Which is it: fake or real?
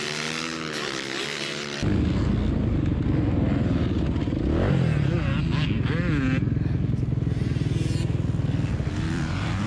real